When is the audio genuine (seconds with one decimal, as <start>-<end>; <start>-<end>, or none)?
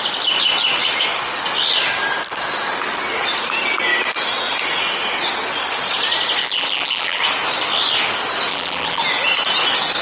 0.0-6.4; 7.2-8.5; 9.0-10.0